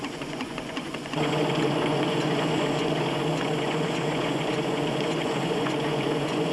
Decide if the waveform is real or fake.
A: fake